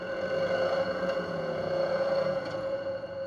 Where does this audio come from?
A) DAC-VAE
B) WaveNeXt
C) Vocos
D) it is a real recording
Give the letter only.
C